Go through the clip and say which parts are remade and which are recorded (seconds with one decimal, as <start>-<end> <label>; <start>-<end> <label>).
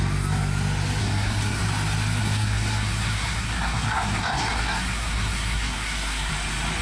0.0-1.0 recorded; 1.0-1.6 remade; 1.6-2.2 recorded; 2.2-6.3 remade; 6.3-6.8 recorded